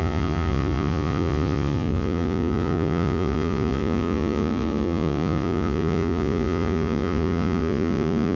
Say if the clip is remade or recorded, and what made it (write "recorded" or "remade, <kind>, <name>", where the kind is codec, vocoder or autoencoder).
remade, vocoder, Vocos